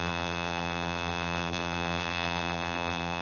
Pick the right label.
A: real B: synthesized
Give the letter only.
B